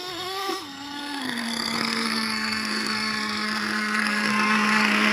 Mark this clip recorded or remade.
remade